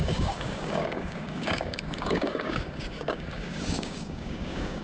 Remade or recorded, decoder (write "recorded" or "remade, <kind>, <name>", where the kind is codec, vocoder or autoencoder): remade, codec, DAC